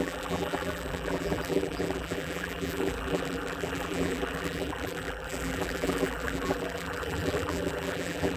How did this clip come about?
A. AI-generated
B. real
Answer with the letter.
A